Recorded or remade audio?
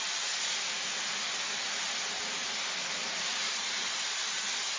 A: recorded